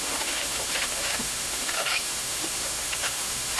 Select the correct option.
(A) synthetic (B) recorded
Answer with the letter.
A